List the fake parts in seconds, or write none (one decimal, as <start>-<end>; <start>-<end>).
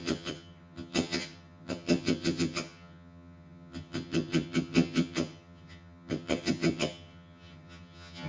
0.0-8.3